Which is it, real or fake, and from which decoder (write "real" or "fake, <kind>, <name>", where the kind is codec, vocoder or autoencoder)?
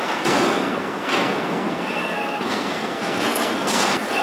fake, codec, SNAC